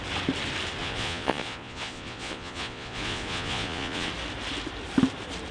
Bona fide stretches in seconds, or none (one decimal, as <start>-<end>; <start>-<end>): 0.0-0.8; 4.1-5.5